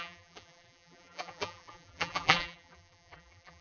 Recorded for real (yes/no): no